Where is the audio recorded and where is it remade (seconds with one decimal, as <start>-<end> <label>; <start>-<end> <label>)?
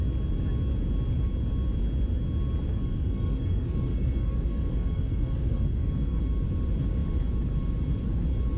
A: 0.0-2.7 recorded; 2.7-6.2 remade; 6.2-8.6 recorded